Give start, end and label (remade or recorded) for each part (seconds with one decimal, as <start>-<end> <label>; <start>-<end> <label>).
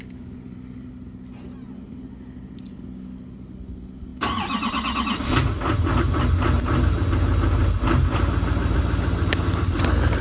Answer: 0.0-10.2 recorded